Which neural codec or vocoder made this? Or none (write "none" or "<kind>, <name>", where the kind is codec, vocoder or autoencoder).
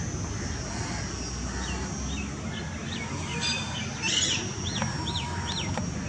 none